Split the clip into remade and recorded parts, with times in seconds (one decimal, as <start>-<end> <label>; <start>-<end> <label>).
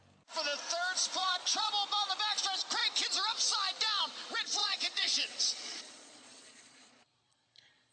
0.0-1.2 recorded; 1.2-1.7 remade; 1.7-4.6 recorded; 4.6-7.9 remade